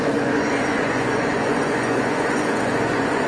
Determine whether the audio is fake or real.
fake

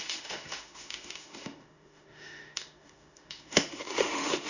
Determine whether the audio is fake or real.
fake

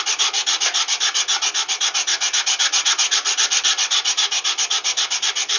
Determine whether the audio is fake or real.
real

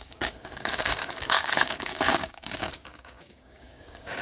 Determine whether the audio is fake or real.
fake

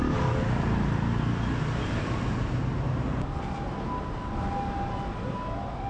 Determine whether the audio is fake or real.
real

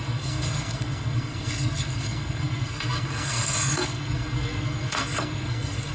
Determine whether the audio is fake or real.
fake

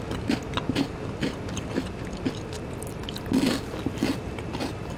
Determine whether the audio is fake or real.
real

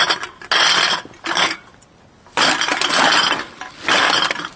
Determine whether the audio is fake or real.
real